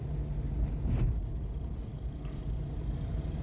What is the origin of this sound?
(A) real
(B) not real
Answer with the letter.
A